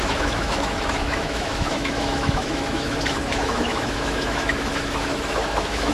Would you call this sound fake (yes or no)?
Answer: yes